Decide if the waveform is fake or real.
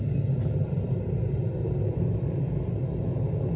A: real